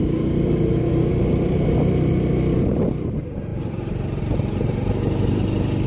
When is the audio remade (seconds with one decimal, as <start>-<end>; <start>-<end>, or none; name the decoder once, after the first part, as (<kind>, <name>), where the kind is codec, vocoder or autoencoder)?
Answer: 3.5-4.2 (vocoder, BigVGAN v2)

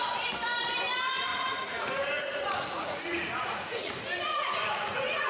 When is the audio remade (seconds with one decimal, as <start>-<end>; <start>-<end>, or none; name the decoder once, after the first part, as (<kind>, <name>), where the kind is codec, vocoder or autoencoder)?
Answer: 1.3-3.9 (vocoder, Vocos); 4.3-5.3